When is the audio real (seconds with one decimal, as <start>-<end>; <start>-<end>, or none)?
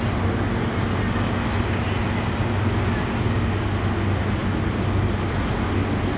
0.0-6.2